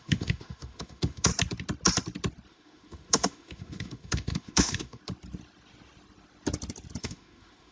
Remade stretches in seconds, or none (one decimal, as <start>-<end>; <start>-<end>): 0.0-1.3; 2.5-5.0; 7.0-7.7